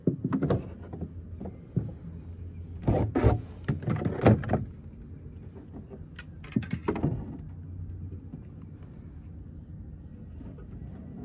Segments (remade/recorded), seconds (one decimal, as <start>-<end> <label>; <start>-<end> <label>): 0.0-11.2 recorded